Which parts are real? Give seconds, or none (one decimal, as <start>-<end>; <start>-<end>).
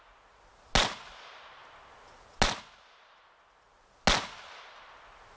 0.0-5.4